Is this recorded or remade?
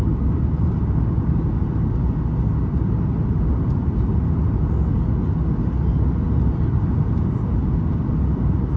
recorded